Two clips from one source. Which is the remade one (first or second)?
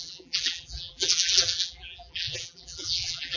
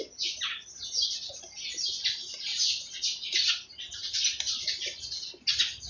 first